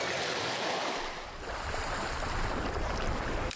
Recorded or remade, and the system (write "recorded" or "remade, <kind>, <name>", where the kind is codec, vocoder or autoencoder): remade, vocoder, BigVGAN v2